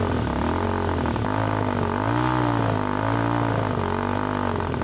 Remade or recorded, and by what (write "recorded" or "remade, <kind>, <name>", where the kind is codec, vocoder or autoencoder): recorded